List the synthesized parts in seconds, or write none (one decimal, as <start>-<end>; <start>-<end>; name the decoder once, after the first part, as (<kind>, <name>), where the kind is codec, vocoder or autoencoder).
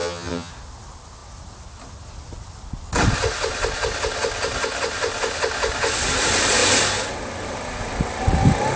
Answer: 0.0-0.5 (vocoder, HiFi-GAN)